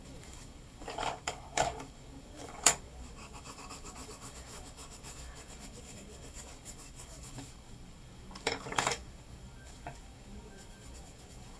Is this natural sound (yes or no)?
no